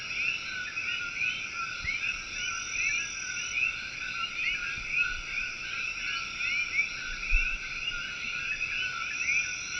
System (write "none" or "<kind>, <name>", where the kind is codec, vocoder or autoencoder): none